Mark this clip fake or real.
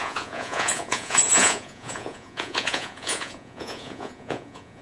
fake